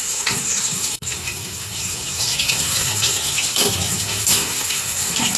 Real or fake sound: fake